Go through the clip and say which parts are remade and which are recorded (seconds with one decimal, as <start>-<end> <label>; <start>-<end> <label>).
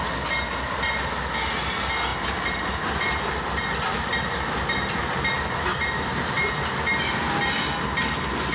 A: 0.0-2.1 recorded; 2.1-6.7 remade; 6.7-8.5 recorded